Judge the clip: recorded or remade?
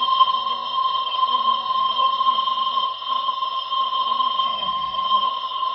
remade